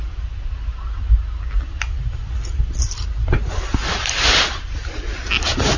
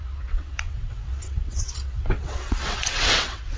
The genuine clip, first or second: first